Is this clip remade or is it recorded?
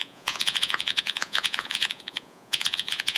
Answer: remade